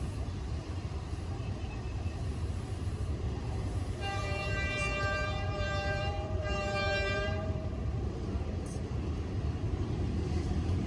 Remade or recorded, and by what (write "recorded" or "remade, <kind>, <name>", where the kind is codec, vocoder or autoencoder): remade, vocoder, BigVGAN v2